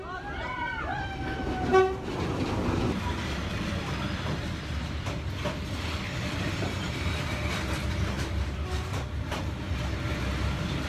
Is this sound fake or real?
real